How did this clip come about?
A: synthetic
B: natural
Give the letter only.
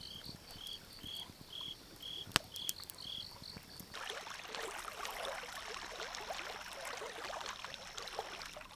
B